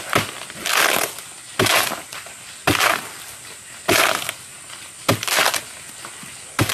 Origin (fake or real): real